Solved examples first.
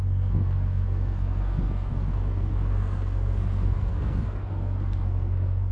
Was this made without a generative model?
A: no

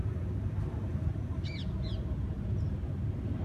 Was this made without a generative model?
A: yes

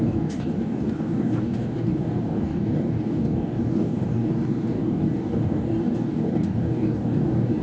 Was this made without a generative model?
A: no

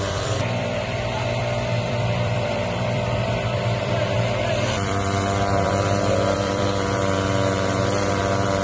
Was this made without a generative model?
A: no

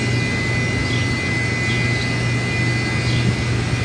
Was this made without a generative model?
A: yes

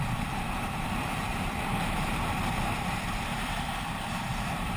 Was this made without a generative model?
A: no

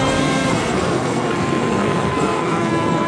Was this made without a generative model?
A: no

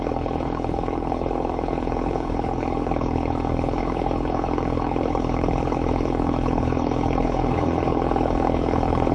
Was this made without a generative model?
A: no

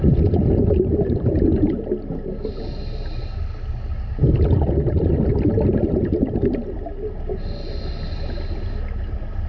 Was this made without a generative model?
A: yes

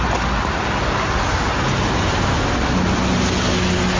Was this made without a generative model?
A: yes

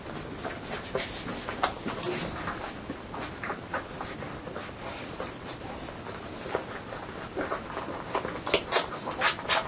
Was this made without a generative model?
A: yes